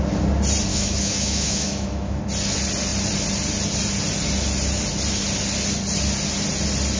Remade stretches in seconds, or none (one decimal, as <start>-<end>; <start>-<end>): 0.7-2.2